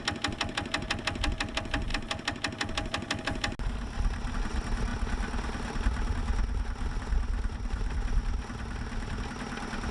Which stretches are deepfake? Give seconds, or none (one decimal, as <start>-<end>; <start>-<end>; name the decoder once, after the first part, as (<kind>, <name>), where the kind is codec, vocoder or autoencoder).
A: none